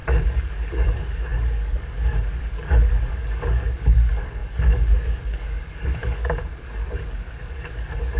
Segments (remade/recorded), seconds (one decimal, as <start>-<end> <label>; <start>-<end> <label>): 0.0-8.2 remade